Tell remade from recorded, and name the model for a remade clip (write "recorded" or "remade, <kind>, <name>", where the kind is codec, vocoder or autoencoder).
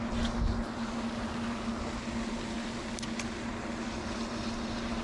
recorded